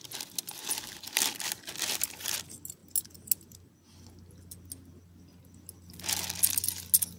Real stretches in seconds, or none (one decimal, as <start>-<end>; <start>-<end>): 0.0-7.2